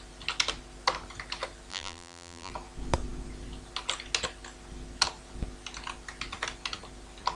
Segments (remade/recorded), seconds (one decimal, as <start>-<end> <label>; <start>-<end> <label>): 0.0-1.7 recorded; 1.7-2.5 remade; 2.5-7.3 recorded